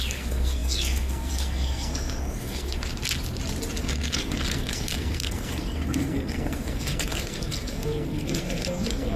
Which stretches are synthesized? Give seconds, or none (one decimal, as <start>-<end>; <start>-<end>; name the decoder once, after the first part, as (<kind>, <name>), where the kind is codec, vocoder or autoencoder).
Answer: 0.0-2.9 (codec, SNAC); 3.8-9.2